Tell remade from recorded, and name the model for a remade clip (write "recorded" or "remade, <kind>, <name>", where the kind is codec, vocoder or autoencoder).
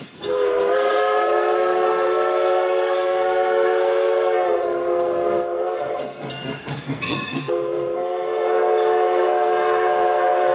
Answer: remade, codec, SNAC